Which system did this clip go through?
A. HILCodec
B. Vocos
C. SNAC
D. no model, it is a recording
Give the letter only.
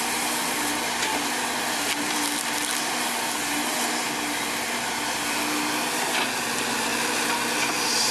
D